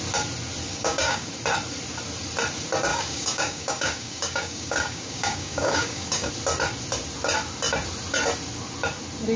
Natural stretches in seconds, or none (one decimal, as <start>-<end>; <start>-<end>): 0.0-0.7; 1.3-2.9; 6.3-9.4